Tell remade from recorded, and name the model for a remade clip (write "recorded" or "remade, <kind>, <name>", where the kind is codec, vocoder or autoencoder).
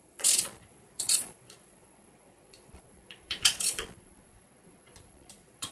remade, vocoder, Vocos